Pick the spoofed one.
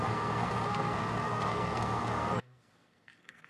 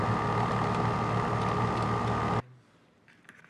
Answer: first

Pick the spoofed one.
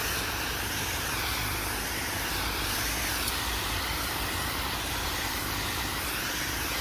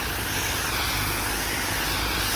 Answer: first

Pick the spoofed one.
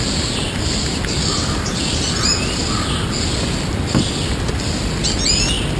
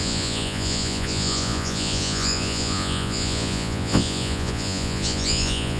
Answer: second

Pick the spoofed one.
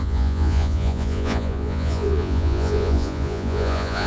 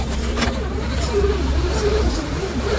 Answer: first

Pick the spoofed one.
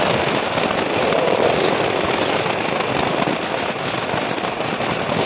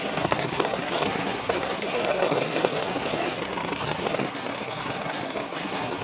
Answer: second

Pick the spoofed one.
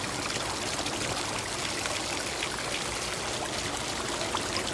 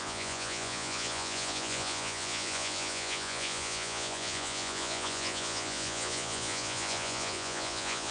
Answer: second